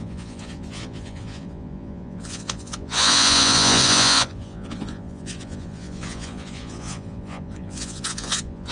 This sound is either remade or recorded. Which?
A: remade